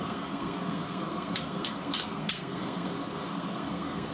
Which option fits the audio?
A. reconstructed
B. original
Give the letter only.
A